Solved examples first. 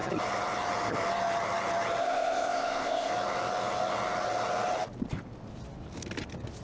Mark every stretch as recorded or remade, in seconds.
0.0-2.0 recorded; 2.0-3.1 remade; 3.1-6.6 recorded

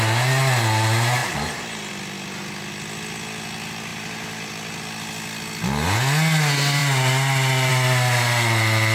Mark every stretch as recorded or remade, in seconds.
0.0-1.2 recorded; 1.2-1.9 remade; 1.9-3.9 recorded; 3.9-4.5 remade; 4.5-8.9 recorded